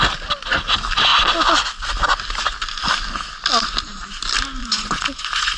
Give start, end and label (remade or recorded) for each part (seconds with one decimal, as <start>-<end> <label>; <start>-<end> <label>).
0.0-4.6 recorded; 4.6-5.6 remade